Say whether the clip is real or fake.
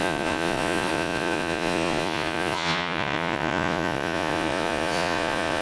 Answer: fake